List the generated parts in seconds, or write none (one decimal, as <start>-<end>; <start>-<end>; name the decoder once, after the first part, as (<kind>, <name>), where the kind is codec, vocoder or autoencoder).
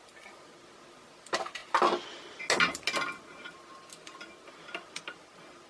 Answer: none